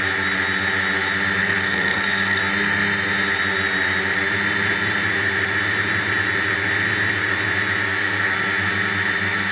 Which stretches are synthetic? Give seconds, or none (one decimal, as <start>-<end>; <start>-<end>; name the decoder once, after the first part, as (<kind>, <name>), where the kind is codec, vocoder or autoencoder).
1.4-2.4 (codec, SNAC)